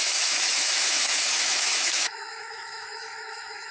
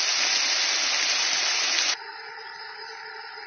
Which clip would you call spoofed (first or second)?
first